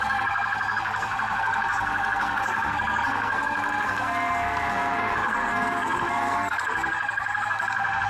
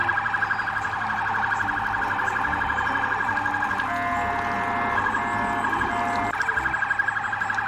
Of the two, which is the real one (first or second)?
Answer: second